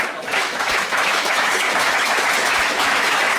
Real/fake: fake